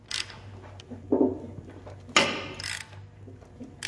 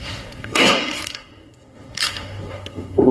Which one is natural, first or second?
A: first